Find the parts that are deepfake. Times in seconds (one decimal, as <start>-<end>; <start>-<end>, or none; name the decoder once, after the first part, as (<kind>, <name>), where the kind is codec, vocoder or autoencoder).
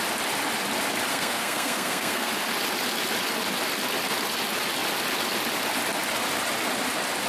1.1-2.3 (codec, SNAC)